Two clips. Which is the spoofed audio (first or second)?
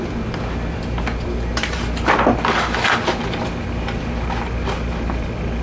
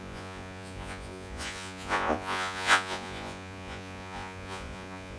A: second